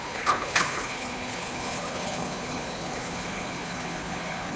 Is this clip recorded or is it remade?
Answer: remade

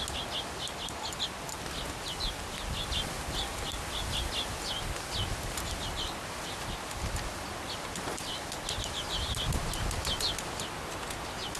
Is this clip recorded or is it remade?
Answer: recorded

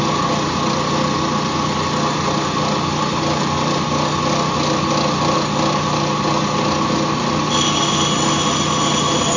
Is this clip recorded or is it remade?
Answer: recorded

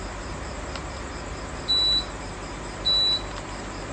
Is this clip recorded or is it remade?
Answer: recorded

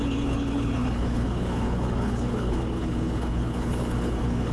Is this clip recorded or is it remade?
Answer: remade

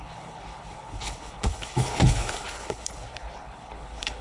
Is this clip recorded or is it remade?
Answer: remade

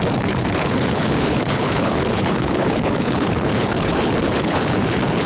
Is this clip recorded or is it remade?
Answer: remade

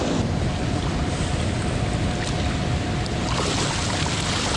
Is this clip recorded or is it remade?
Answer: recorded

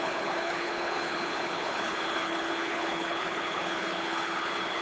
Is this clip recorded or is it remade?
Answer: remade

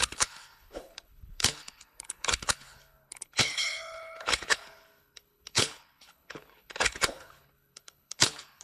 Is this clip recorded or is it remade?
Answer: remade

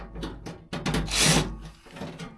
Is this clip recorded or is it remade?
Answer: recorded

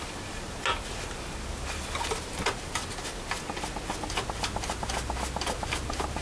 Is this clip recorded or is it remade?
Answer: recorded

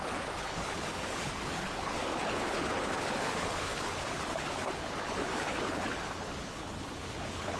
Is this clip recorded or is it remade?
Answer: remade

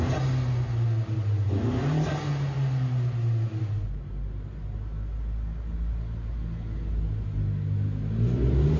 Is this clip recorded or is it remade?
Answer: recorded